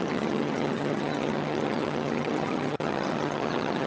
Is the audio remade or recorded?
remade